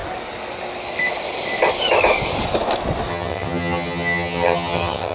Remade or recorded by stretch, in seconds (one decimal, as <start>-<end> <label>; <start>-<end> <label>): 0.0-3.1 recorded; 3.1-5.1 remade